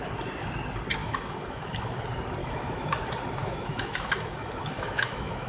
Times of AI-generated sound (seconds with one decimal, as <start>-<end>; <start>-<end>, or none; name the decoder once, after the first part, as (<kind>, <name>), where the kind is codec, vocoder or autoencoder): 1.0-2.0 (autoencoder, DAC-VAE); 2.4-3.0; 3.4-5.5